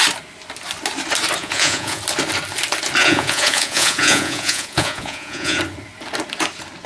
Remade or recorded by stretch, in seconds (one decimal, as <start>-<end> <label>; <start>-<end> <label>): 0.0-1.4 recorded; 1.4-2.0 remade; 2.0-3.0 recorded; 3.0-5.6 remade; 5.6-6.9 recorded